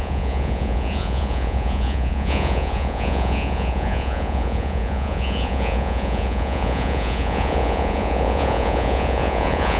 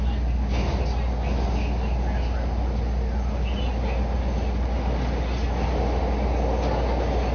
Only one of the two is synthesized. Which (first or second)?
first